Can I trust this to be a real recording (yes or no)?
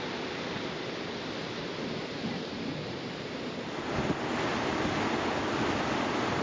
yes